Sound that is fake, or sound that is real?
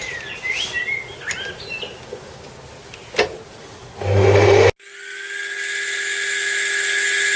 real